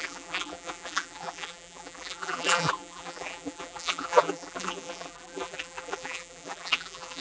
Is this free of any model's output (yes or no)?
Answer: no